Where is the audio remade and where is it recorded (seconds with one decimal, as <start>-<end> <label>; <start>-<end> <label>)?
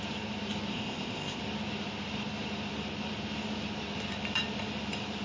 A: 0.0-0.7 recorded; 0.7-1.4 remade; 1.4-5.2 recorded